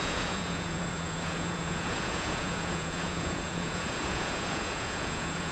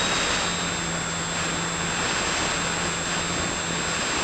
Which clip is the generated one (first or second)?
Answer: first